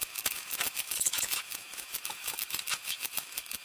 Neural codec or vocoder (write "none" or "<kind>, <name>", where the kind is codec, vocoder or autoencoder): autoencoder, DAC-VAE